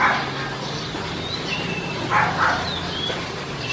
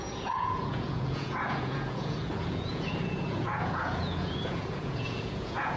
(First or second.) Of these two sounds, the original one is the first